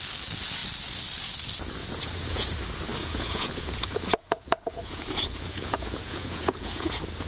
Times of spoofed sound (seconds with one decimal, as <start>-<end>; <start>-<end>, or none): 1.8-2.5; 3.0-7.3